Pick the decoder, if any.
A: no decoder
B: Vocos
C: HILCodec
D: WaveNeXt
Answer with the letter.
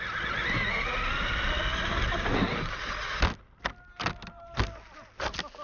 A